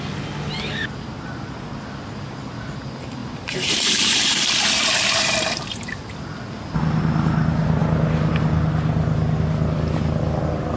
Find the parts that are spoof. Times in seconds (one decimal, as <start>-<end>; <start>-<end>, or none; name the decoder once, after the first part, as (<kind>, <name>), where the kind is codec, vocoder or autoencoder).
3.2-6.0 (vocoder, BigVGAN v2)